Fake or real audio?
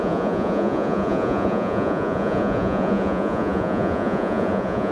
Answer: fake